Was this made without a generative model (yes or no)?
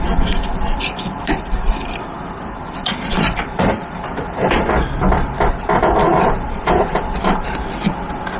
no